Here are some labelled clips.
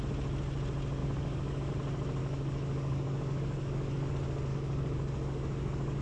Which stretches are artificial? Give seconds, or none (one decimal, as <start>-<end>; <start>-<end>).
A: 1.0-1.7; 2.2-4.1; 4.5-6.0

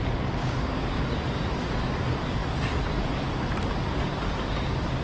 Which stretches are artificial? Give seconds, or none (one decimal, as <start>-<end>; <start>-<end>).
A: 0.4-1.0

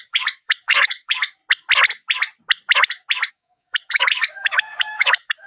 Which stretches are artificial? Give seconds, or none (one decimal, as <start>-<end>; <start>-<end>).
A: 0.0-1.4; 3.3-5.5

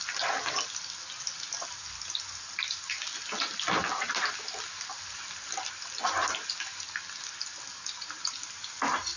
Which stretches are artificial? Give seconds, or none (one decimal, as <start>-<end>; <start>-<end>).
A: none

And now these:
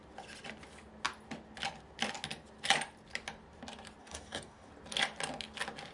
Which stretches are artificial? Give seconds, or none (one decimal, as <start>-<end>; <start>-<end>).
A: 4.0-4.7

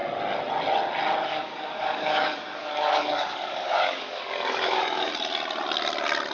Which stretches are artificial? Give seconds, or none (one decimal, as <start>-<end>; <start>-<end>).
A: 1.3-5.1